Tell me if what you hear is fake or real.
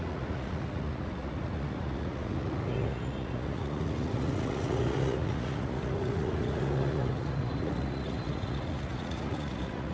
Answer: fake